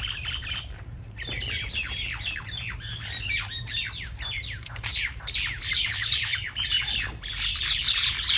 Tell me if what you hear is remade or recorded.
remade